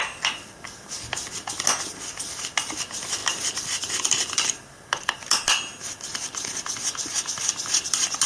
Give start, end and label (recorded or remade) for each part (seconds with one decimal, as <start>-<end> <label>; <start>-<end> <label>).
0.0-8.3 recorded

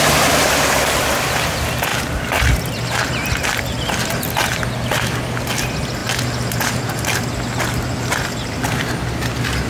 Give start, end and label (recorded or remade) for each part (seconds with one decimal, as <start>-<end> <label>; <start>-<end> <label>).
0.0-9.7 recorded

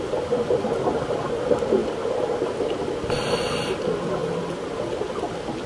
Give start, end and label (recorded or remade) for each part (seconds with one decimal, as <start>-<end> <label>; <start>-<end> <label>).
0.0-5.7 recorded

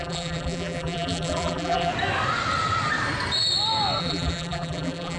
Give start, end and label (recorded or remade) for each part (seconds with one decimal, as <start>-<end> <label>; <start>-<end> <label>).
0.0-1.9 remade; 1.9-4.0 recorded; 4.0-5.2 remade